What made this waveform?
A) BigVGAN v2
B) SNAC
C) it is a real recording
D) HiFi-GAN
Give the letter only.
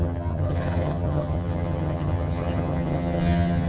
D